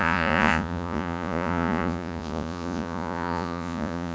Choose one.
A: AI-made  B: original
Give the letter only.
A